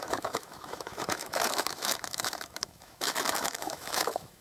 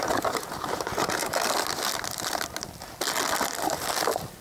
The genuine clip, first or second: second